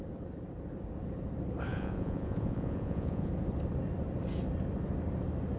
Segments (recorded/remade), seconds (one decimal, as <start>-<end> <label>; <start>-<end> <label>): 0.0-1.7 recorded; 1.7-3.3 remade; 3.3-5.6 recorded